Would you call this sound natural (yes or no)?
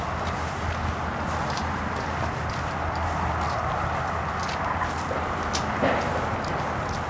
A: yes